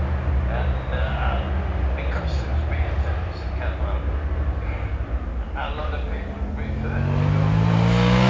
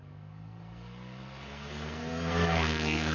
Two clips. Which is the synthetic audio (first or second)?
second